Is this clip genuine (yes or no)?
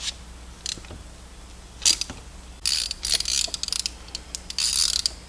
yes